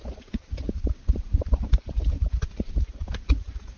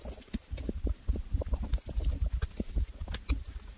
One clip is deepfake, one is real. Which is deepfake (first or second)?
first